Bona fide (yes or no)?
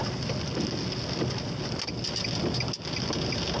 yes